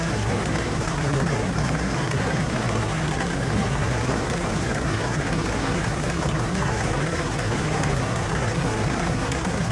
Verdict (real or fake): fake